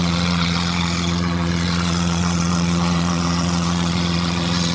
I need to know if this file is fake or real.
fake